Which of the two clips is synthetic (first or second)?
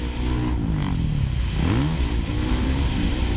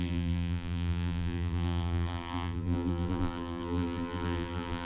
second